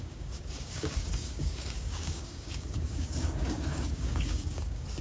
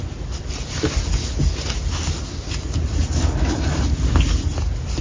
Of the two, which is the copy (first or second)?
first